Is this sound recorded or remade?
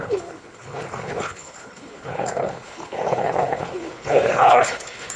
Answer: remade